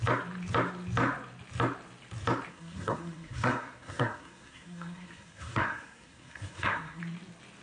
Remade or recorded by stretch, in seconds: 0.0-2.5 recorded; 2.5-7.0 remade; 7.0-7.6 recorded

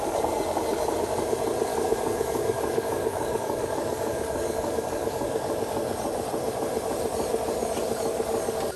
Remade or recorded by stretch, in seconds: 0.0-1.7 recorded; 1.7-5.5 remade; 5.5-8.8 recorded

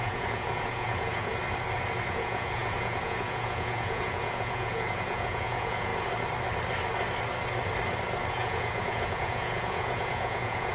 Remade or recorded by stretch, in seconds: 0.0-1.3 remade; 1.3-2.1 recorded; 2.1-5.9 remade; 5.9-8.3 recorded; 8.3-10.7 remade